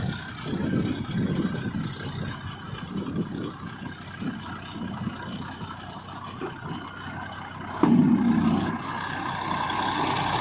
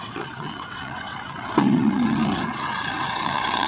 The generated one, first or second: second